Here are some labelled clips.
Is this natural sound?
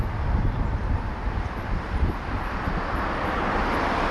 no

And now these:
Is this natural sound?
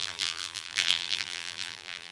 no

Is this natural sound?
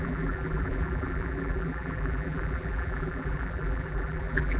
no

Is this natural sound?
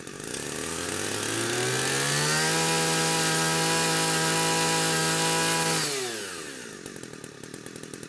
yes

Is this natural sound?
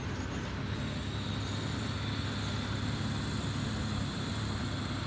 yes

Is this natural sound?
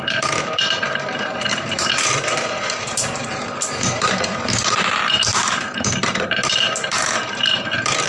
no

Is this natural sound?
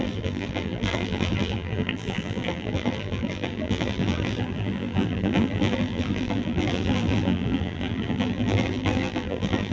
no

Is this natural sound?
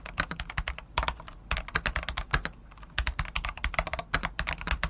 yes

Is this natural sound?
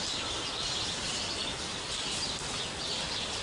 yes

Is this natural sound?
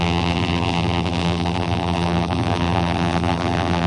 no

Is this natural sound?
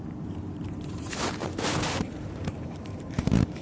no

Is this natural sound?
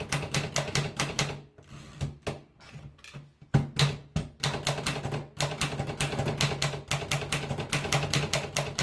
yes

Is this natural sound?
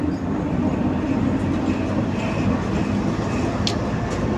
yes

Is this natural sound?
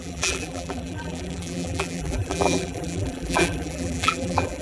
no